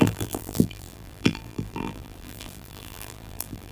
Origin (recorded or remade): remade